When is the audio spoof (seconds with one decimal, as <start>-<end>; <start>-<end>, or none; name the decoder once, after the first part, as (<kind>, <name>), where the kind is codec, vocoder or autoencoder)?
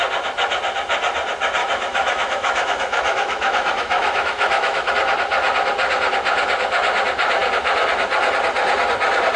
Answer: 1.6-4.9 (autoencoder, DAC-VAE)